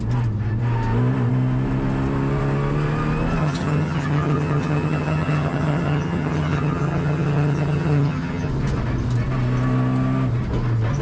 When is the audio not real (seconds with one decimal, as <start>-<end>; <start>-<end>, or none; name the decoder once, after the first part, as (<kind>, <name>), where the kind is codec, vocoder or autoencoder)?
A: 3.4-8.5 (vocoder, HiFi-GAN)